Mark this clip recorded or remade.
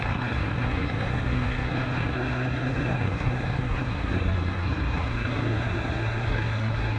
remade